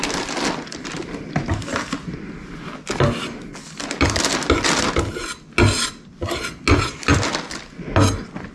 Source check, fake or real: real